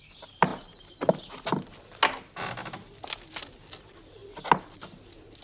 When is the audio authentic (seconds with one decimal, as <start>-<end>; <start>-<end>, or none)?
0.0-5.4